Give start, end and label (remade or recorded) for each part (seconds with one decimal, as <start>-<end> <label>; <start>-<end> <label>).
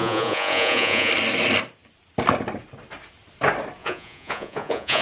0.0-1.1 remade; 1.1-3.8 recorded; 3.8-5.0 remade